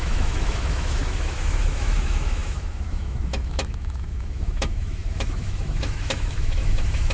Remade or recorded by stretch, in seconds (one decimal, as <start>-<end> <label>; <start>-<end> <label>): 0.0-7.1 remade